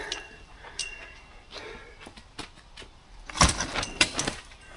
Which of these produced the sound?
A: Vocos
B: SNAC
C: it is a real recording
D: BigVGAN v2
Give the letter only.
D